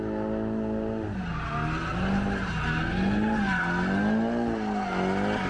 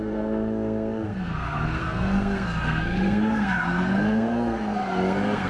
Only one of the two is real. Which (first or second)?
first